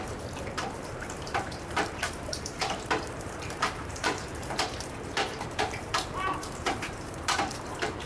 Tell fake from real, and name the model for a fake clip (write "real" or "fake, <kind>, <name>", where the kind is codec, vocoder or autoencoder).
fake, vocoder, BigVGAN v2